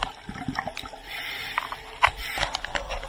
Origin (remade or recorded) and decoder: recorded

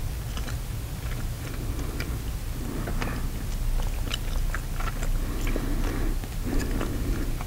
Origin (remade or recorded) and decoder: recorded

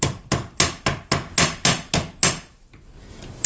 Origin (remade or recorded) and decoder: recorded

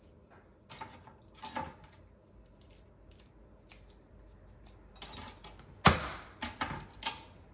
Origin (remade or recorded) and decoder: recorded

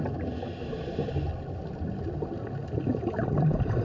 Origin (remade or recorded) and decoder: recorded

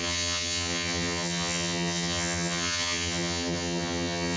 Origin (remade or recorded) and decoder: remade, vocoder, HiFi-GAN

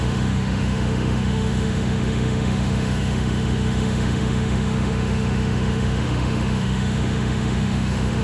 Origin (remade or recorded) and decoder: remade, autoencoder, DAC-VAE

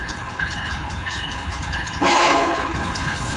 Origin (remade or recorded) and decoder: remade, codec, HILCodec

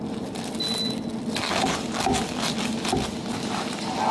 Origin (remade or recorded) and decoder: recorded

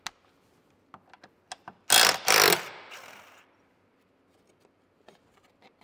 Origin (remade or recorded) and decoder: recorded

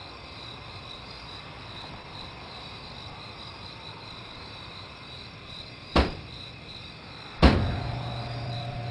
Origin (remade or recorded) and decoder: remade, vocoder, BigVGAN v2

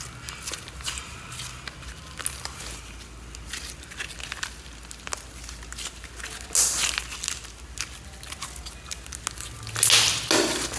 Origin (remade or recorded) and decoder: recorded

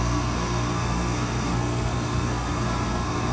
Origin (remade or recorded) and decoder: remade, codec, SNAC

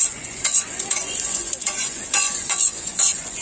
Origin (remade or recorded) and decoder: remade, vocoder, Vocos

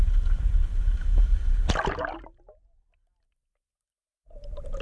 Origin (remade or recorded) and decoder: recorded